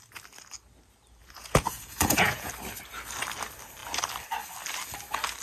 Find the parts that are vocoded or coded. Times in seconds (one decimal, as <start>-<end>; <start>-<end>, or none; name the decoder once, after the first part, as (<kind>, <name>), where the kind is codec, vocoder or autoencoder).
1.2-2.5 (vocoder, Vocos)